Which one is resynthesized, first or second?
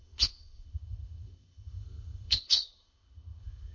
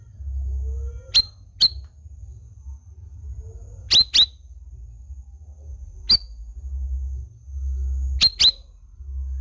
first